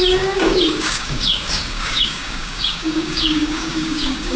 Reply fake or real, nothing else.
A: fake